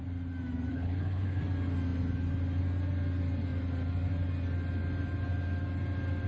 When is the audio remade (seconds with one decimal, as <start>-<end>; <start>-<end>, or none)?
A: 0.7-1.4